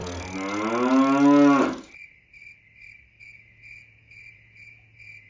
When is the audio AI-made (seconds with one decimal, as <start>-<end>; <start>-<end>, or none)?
3.2-5.3